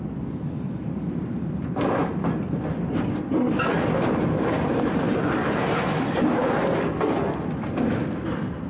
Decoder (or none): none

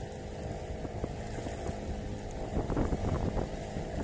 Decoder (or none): none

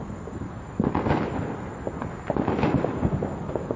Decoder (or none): none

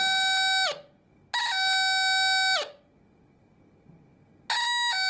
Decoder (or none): none